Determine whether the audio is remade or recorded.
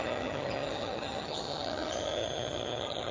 remade